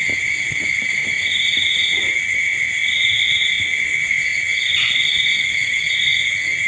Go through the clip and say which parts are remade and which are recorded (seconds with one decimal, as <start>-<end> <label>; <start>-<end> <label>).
0.0-6.7 recorded